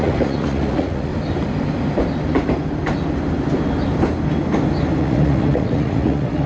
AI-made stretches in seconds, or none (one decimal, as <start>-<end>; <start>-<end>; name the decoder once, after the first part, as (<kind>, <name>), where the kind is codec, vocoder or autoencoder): 0.0-1.1 (vocoder, Vocos); 5.0-6.5